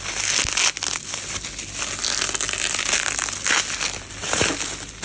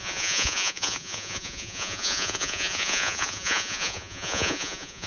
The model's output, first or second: second